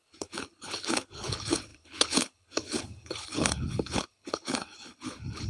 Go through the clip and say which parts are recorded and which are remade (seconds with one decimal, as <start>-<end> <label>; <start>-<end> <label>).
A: 0.0-5.5 remade